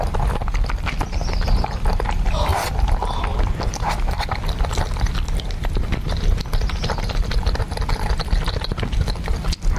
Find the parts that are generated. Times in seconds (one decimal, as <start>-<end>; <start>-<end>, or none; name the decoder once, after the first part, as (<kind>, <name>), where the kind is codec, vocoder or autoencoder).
none